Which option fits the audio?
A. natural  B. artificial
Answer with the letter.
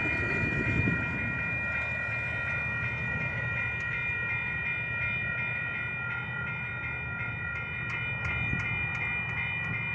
A